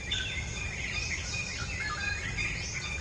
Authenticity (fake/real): real